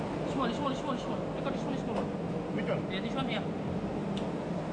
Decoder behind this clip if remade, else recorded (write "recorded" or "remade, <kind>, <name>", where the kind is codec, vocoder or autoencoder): recorded